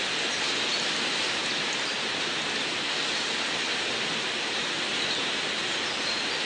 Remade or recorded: recorded